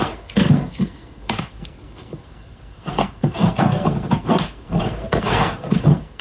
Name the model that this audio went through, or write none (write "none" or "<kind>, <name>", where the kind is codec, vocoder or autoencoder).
codec, SNAC